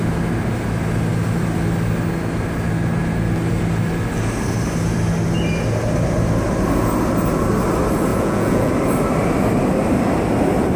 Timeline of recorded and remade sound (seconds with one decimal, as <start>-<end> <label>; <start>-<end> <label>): 0.0-8.1 recorded; 8.1-8.7 remade; 8.7-10.8 recorded